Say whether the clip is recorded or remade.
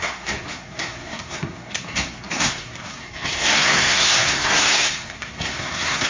remade